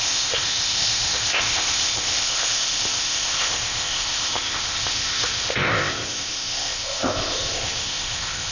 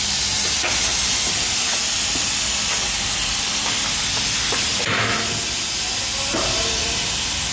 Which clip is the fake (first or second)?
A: first